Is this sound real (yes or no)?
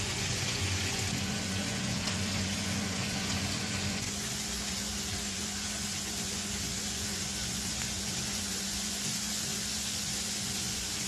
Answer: no